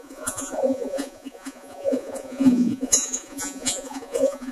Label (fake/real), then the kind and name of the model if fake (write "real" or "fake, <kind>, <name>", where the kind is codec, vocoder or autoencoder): fake, vocoder, Vocos